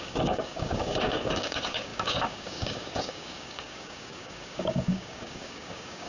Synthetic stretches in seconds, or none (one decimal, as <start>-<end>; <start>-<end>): 0.0-6.1